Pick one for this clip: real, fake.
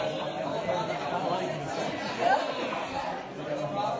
real